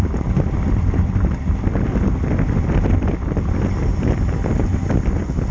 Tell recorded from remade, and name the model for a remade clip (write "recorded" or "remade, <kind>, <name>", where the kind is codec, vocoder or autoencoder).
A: recorded